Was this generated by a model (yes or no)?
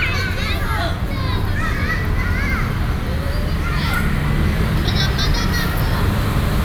no